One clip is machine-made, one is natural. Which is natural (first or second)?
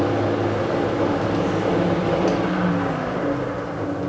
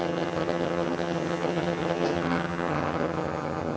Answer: first